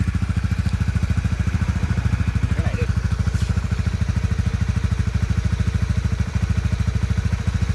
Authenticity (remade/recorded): remade